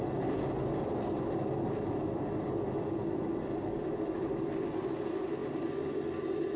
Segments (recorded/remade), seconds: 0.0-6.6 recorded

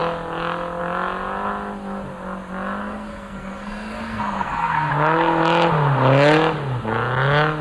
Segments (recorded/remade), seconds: 0.0-2.8 recorded; 2.8-4.9 remade; 4.9-7.6 recorded

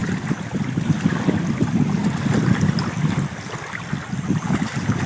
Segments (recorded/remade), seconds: 0.0-5.1 recorded

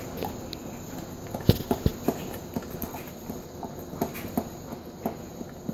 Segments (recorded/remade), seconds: 0.0-5.7 recorded

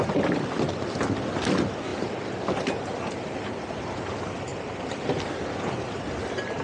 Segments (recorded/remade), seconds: 0.0-6.6 recorded

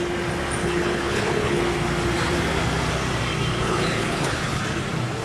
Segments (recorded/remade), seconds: 0.0-0.6 recorded; 0.6-1.6 remade; 1.6-3.5 recorded; 3.5-4.6 remade; 4.6-5.2 recorded

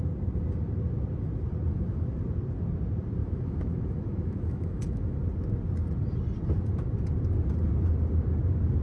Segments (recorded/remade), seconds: 0.0-1.7 recorded; 1.7-2.2 remade; 2.2-3.2 recorded; 3.2-5.2 remade; 5.2-8.8 recorded